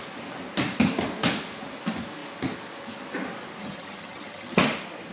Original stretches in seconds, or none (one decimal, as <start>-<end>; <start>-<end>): 0.0-3.6; 4.6-5.1